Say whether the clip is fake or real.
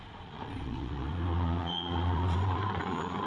fake